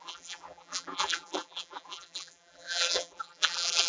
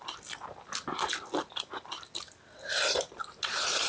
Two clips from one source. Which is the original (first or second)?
second